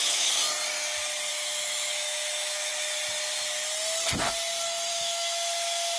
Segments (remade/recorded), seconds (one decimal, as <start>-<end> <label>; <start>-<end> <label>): 0.0-0.4 remade; 0.4-1.3 recorded; 1.3-2.7 remade; 2.7-4.9 recorded; 4.9-6.0 remade